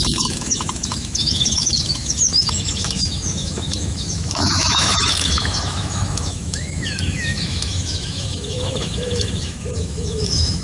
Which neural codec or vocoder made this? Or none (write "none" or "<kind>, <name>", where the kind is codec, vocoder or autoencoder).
autoencoder, DAC-VAE